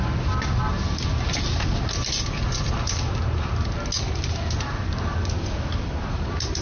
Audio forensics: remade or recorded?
recorded